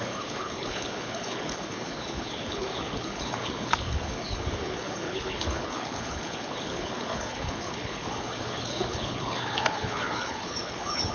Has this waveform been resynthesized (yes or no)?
yes